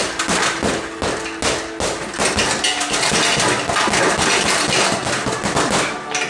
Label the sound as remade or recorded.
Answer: recorded